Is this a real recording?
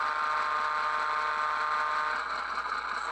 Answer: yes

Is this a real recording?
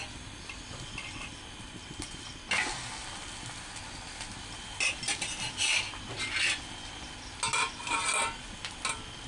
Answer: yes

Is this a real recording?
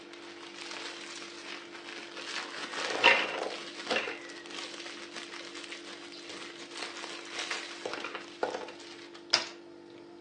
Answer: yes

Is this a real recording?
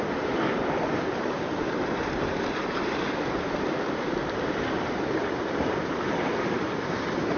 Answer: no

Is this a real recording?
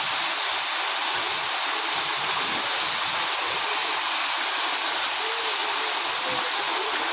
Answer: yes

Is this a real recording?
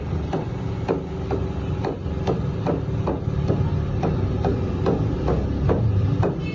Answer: yes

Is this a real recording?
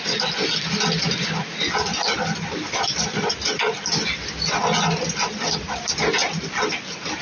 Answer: yes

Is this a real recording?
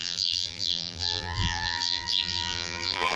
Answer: no